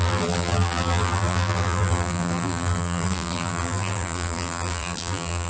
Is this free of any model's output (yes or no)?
no